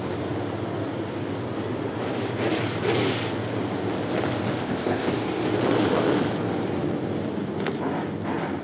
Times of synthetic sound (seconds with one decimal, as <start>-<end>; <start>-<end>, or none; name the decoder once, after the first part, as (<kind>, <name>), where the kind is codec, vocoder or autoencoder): 4.6-5.1 (codec, ZipCodec)